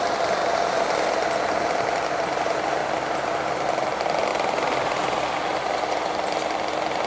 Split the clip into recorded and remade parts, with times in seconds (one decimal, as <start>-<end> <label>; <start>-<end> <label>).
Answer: 0.0-2.8 recorded; 2.8-3.9 remade; 3.9-4.3 recorded; 4.3-5.0 remade; 5.0-5.5 recorded; 5.5-7.1 remade